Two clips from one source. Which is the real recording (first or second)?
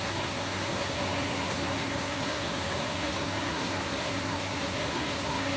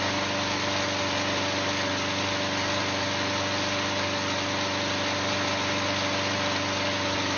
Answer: second